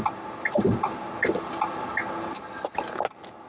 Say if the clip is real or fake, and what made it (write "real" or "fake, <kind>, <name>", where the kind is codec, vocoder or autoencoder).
real